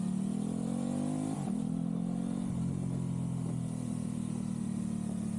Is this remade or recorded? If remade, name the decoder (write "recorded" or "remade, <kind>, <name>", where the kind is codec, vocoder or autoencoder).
recorded